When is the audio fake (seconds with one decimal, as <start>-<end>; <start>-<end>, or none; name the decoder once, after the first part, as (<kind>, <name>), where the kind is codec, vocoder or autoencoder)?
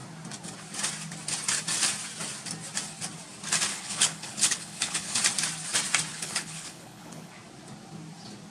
3.7-5.2 (codec, HILCodec); 6.1-7.3